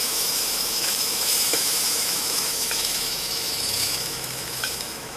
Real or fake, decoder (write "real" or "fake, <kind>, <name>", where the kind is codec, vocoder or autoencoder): fake, autoencoder, DAC-VAE